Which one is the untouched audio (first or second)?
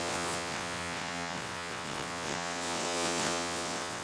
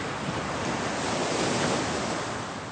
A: second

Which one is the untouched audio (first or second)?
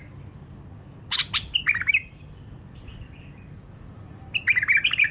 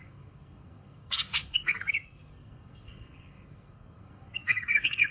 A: first